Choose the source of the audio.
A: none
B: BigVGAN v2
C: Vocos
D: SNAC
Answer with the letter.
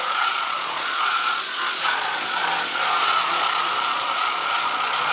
C